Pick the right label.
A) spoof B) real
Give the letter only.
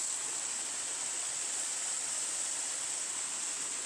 B